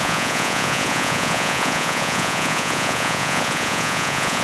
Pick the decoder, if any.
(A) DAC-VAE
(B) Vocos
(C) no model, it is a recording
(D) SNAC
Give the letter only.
B